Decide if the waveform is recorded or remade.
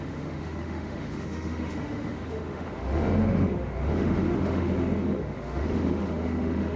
remade